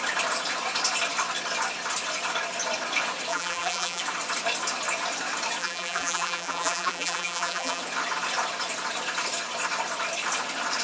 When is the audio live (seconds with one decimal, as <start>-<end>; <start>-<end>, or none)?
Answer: 0.0-3.3; 4.0-5.6; 7.8-10.8